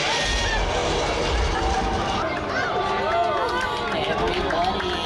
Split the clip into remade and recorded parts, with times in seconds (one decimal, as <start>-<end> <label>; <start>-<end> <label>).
0.0-0.8 recorded; 0.8-3.0 remade; 3.0-5.1 recorded